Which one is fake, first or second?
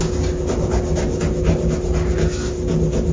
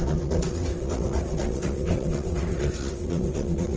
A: second